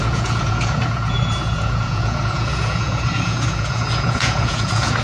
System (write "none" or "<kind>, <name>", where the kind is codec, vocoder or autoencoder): vocoder, Vocos